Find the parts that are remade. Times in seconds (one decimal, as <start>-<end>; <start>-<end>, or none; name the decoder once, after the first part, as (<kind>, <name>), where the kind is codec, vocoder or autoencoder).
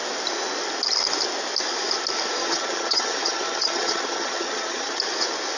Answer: 2.4-5.0 (vocoder, HiFi-GAN)